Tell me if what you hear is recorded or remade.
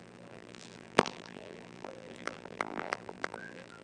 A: remade